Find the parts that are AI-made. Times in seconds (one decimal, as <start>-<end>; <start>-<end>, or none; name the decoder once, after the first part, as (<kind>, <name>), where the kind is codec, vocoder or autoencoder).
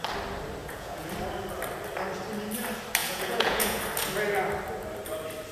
0.6-1.1 (vocoder, Vocos); 3.0-3.8